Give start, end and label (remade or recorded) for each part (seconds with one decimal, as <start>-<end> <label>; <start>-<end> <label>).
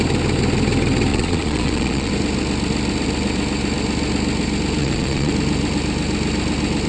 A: 0.0-1.1 recorded; 1.1-2.1 remade; 2.1-4.8 recorded; 4.8-5.3 remade; 5.3-6.9 recorded